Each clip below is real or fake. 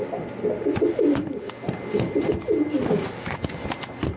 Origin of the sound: real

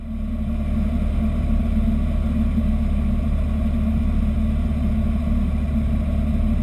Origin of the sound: real